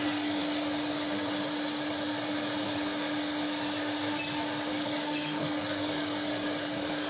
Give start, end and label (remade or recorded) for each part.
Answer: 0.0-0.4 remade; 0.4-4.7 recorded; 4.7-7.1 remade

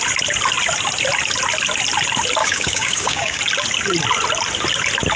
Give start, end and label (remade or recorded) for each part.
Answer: 0.0-2.4 recorded; 2.4-3.4 remade; 3.4-5.2 recorded